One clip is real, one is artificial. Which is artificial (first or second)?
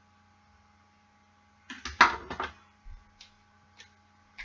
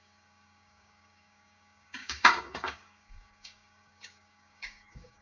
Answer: second